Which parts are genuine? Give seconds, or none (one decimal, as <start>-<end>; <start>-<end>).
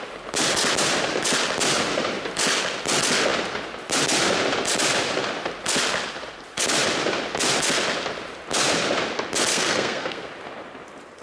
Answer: 0.0-9.5; 10.3-11.2